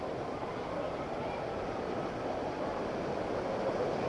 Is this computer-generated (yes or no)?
no